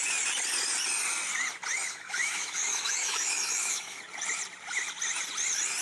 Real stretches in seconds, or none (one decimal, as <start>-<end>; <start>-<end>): 0.0-1.8; 4.0-5.8